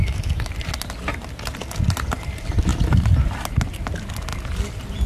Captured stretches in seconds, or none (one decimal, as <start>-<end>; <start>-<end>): 0.5-5.1